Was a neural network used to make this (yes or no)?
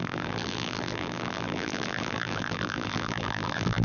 yes